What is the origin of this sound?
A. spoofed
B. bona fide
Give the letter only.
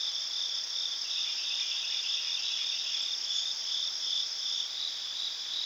A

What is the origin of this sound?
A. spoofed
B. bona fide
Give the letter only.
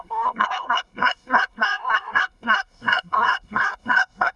A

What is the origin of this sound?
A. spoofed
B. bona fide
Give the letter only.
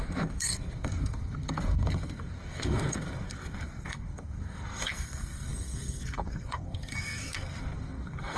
A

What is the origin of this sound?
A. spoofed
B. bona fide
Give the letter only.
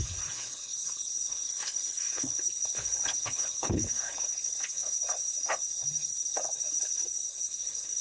A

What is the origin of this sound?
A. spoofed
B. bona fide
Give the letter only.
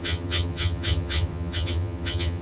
A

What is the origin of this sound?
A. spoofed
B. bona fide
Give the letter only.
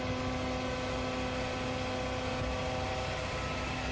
B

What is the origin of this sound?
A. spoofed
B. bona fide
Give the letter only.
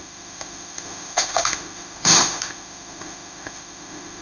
A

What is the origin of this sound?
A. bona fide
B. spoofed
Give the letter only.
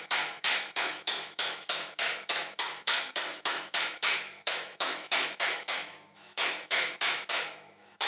B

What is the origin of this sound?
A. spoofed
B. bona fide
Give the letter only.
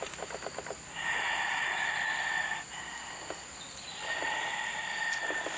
B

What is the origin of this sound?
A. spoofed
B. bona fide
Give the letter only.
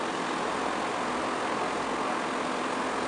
B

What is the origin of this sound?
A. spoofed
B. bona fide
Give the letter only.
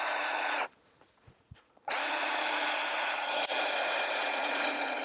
A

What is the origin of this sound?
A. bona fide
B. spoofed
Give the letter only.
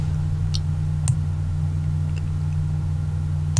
A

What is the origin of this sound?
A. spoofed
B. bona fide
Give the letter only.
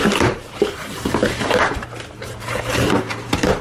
A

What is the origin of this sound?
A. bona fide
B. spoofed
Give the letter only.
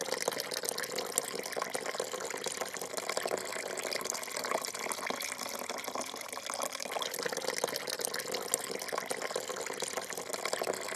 A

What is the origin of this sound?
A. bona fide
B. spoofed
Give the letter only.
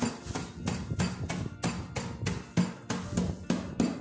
A